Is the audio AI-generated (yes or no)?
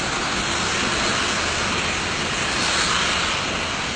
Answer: no